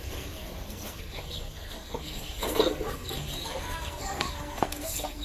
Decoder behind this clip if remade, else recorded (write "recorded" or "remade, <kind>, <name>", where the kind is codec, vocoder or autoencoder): remade, codec, SNAC